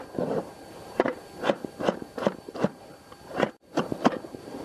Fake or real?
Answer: fake